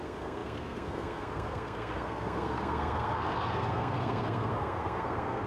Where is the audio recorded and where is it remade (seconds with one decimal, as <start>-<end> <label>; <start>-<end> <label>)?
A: 0.0-5.5 remade